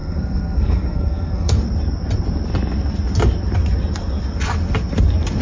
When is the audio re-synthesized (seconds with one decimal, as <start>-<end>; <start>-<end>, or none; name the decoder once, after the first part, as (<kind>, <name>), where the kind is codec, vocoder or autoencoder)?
0.0-1.5 (codec, SNAC)